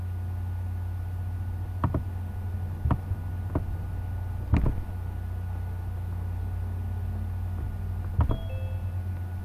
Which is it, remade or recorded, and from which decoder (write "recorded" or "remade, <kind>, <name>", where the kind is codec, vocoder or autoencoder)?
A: recorded